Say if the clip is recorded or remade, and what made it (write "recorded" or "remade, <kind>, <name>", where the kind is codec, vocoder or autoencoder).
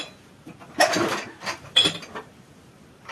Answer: recorded